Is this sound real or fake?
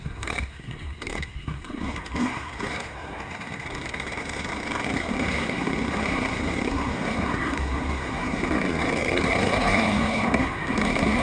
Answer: fake